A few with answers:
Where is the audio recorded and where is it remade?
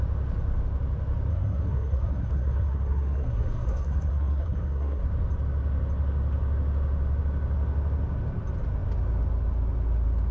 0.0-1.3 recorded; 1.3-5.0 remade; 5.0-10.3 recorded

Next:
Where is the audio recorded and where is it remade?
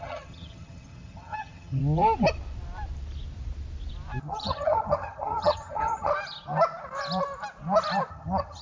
0.0-1.8 remade; 1.8-4.3 recorded; 4.3-6.1 remade; 6.1-8.1 recorded; 8.1-8.6 remade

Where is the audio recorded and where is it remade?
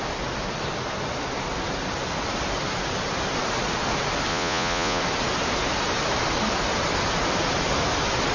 0.0-4.3 recorded; 4.3-5.0 remade; 5.0-8.3 recorded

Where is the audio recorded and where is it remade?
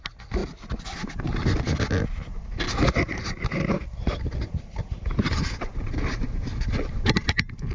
0.0-7.7 recorded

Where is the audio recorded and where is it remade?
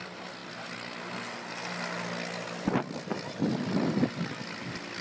0.0-5.0 recorded